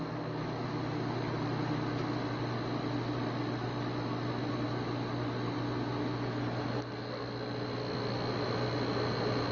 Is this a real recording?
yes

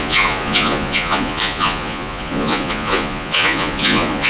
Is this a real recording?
no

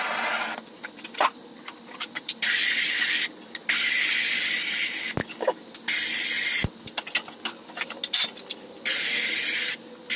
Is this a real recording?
yes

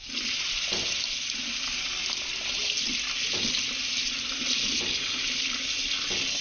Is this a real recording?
yes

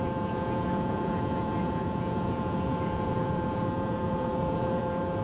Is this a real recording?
no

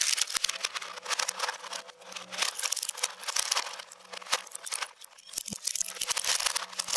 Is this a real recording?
yes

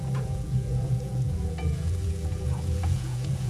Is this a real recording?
no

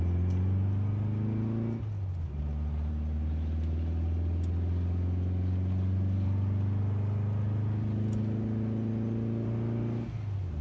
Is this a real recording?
yes